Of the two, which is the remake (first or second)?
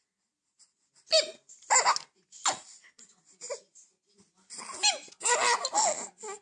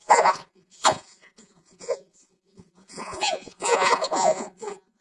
second